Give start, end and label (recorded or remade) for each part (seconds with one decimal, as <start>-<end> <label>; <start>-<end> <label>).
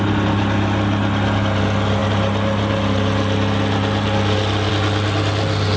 0.0-5.8 recorded